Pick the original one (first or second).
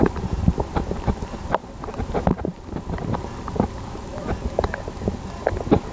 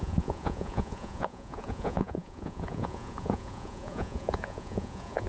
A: first